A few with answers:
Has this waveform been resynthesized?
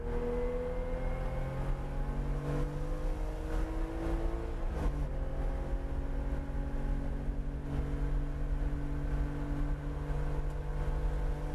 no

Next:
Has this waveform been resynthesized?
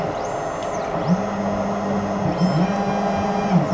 no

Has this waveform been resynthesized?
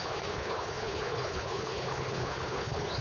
yes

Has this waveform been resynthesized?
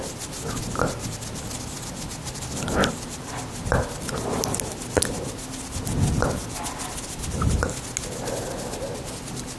no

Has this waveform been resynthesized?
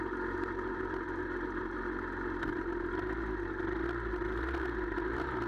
no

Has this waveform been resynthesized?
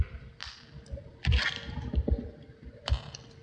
yes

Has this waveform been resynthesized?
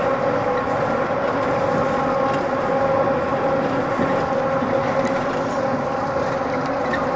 no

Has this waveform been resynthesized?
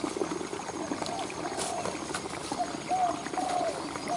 no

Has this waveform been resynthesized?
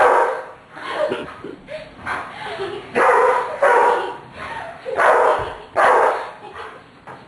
no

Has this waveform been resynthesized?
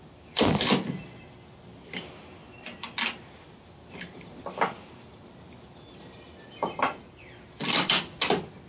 no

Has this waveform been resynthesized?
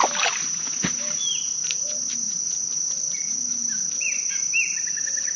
yes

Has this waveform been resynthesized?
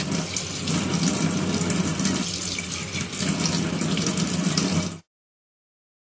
no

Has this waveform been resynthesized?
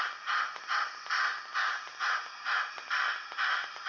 no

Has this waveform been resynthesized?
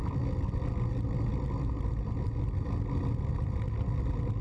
no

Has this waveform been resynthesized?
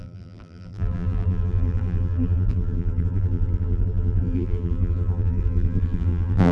yes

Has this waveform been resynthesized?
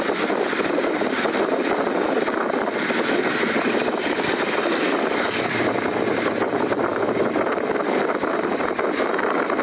no